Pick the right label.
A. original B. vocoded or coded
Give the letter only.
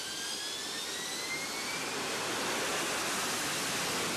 A